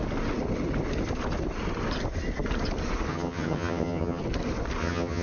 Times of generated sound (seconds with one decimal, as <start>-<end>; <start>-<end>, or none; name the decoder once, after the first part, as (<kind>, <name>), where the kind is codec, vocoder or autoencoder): 3.1-4.2 (vocoder, HiFi-GAN); 4.8-5.2

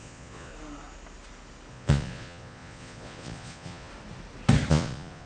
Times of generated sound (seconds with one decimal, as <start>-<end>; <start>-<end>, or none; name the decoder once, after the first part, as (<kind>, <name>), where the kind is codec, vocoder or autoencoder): 0.0-0.5 (vocoder, Vocos); 1.7-3.9; 4.7-5.3

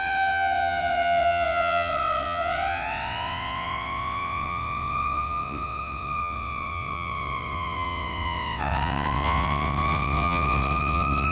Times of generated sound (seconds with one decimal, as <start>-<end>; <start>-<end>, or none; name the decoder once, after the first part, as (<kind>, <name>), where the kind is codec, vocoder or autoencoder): 0.0-11.3 (vocoder, WaveNeXt)

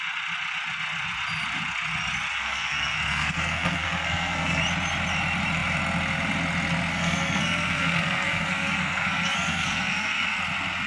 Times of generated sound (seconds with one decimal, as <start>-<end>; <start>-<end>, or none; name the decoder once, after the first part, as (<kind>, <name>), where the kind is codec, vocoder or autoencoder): 2.3-4.6 (codec, SNAC); 6.9-10.4

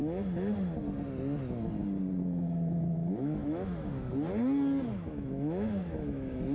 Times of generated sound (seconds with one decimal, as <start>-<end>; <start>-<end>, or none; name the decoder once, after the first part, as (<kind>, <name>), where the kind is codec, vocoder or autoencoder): 2.2-4.1 (autoencoder, DAC-VAE); 4.9-6.5

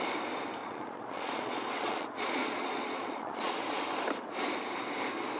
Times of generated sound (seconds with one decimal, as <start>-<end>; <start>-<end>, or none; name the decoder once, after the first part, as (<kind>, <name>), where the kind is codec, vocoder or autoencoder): 0.6-3.8 (vocoder, Vocos)

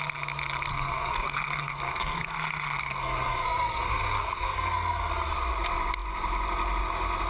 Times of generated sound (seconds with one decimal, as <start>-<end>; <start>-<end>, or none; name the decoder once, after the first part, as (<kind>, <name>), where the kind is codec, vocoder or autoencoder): 0.7-5.1 (codec, SNAC)